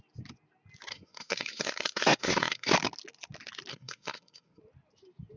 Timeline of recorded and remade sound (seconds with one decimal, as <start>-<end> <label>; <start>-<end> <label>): 0.0-0.9 recorded; 0.9-2.7 remade; 2.7-3.7 recorded; 3.7-4.6 remade; 4.6-5.4 recorded